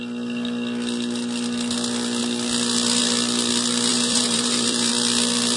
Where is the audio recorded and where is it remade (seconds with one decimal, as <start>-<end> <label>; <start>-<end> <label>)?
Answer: 0.0-3.9 recorded; 3.9-4.9 remade; 4.9-5.6 recorded